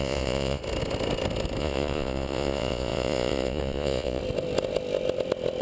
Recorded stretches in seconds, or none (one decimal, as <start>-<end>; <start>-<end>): 0.6-1.6; 4.2-5.6